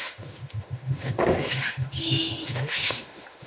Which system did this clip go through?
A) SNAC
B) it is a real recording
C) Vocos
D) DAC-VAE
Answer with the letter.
D